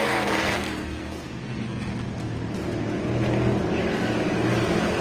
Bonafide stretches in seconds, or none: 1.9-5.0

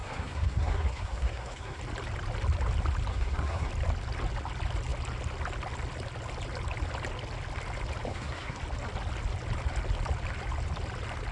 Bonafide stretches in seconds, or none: 1.8-3.1; 3.7-8.1; 8.6-11.3

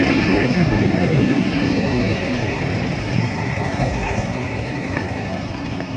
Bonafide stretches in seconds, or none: 2.6-3.0

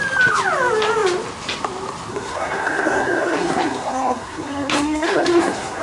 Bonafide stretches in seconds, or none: 0.0-2.1

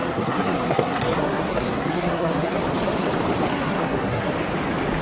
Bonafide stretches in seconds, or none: 2.6-3.5; 4.3-5.0

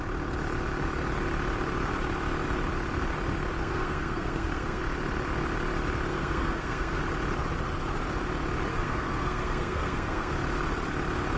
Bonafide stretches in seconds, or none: 0.0-3.6; 4.8-6.1; 7.0-8.7; 10.3-11.4